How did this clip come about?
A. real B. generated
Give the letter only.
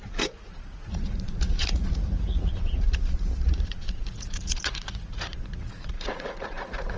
B